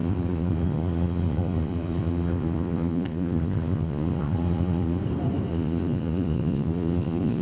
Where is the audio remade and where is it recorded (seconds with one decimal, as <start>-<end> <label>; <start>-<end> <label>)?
0.0-5.0 remade; 5.0-5.5 recorded; 5.5-7.4 remade